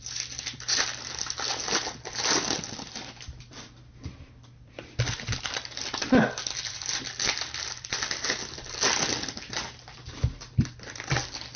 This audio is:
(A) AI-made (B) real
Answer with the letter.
B